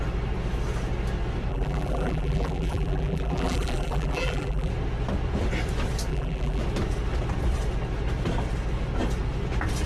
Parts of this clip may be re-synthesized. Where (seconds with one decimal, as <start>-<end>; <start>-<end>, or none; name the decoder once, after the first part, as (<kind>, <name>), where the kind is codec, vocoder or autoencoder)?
1.5-4.7 (vocoder, BigVGAN v2); 6.1-6.6